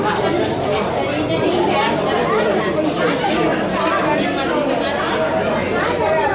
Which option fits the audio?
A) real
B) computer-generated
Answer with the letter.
A